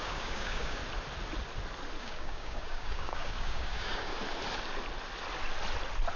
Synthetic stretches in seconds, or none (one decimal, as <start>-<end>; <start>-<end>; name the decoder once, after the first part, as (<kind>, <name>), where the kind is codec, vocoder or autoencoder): 0.0-0.8 (codec, DAC); 2.0-4.1